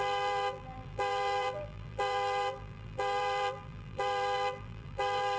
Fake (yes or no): yes